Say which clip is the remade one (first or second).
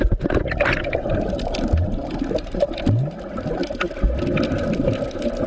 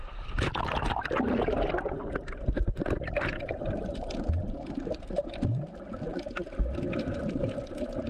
second